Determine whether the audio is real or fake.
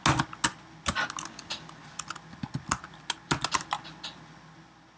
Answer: real